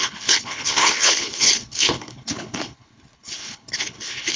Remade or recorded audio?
remade